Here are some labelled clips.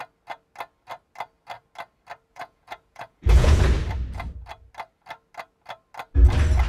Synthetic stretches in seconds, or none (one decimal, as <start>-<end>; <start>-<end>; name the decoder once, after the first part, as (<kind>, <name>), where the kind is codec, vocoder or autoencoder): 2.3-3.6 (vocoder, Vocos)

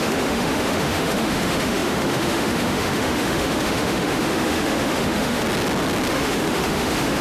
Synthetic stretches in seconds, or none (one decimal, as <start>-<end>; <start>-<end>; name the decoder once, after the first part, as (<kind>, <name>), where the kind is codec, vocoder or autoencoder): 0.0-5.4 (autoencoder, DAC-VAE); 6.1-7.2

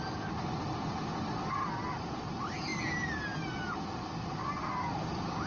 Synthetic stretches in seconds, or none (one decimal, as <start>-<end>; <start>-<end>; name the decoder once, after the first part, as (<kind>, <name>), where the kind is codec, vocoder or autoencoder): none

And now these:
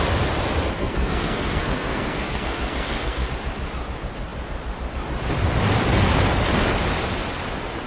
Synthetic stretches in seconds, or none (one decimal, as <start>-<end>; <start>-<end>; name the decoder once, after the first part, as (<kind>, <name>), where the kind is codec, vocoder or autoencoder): 0.8-3.3 (codec, SNAC)

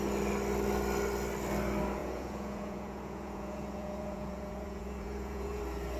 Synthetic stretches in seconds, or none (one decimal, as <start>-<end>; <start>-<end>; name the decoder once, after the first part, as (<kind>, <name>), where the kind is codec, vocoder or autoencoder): 2.0-5.6 (vocoder, Vocos)